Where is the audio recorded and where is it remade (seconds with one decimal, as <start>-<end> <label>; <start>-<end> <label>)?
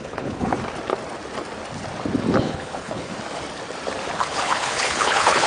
0.0-0.5 remade; 0.5-2.4 recorded; 2.4-3.1 remade; 3.1-4.2 recorded; 4.2-5.5 remade